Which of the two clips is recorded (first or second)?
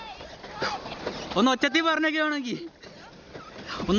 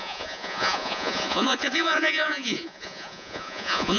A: first